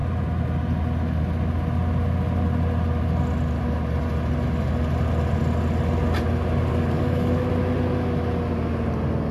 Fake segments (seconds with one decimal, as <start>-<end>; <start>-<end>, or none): 6.7-7.5